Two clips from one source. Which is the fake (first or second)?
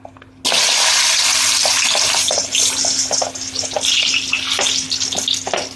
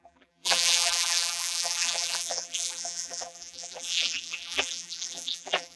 second